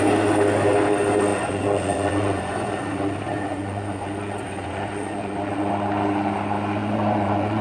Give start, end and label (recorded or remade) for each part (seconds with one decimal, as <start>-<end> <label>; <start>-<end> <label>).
0.0-1.3 recorded; 1.3-5.7 remade; 5.7-6.8 recorded; 6.8-7.6 remade